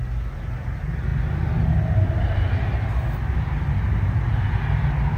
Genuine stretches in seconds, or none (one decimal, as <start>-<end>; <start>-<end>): 0.0-5.2